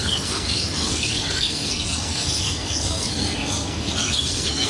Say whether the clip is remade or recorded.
remade